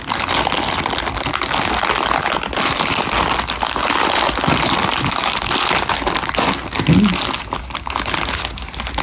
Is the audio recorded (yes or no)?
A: yes